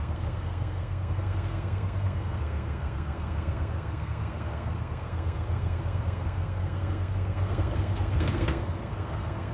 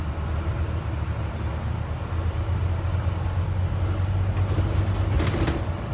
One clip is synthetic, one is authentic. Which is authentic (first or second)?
second